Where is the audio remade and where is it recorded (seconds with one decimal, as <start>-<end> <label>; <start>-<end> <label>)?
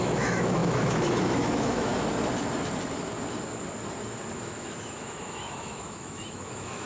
0.0-1.9 remade; 1.9-4.3 recorded; 4.3-6.9 remade